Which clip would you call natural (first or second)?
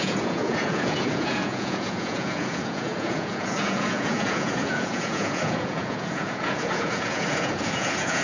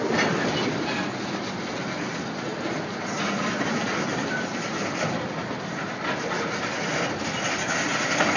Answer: second